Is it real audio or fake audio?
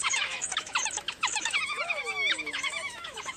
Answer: fake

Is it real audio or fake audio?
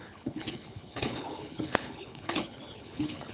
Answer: fake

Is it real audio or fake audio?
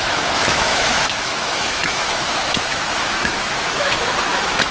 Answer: fake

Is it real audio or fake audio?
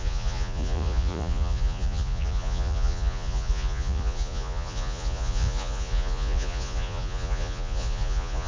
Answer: fake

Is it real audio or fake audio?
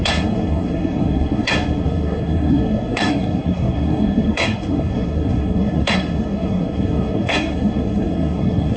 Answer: fake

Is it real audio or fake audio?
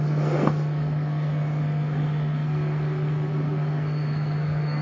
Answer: fake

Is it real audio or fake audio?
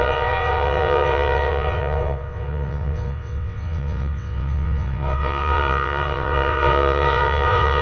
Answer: fake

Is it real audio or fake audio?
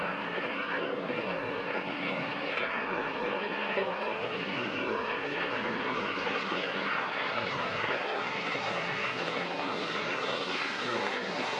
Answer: fake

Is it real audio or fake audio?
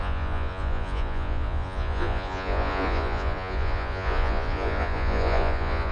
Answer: fake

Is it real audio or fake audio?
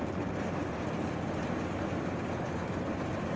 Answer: real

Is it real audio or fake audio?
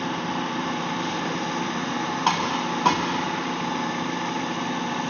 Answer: real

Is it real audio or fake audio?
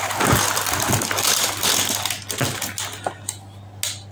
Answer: real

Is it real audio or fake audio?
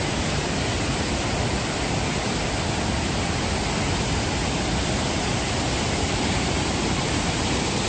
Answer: real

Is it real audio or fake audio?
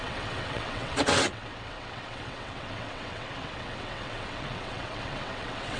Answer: fake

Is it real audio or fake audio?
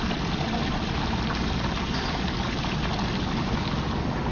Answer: real